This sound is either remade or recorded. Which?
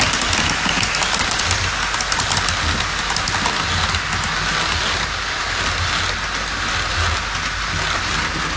recorded